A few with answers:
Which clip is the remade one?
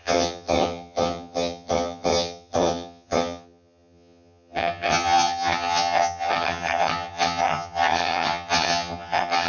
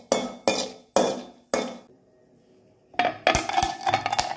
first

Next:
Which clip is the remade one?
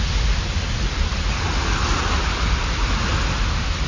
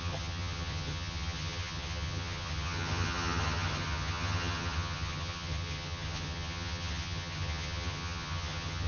second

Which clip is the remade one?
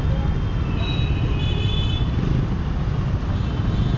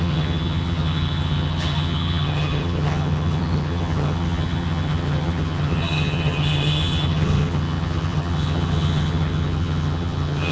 second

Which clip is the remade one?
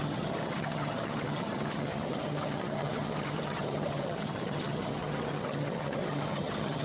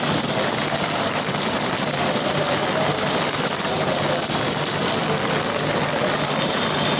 first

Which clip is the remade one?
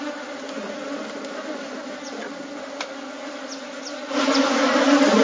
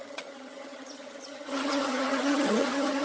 second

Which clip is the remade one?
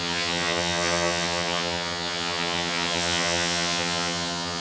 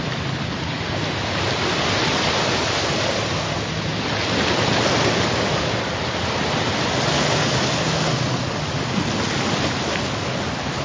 first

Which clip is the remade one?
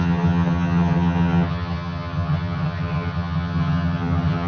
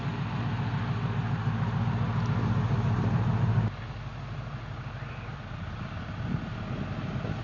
first